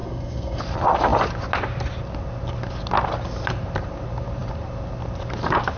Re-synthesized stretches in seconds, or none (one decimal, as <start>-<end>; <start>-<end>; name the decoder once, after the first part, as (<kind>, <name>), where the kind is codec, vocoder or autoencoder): 0.0-0.6 (codec, SNAC)